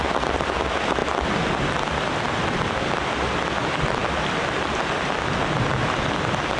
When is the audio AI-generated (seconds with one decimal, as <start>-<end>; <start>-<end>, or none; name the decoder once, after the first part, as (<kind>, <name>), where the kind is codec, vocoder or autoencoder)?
none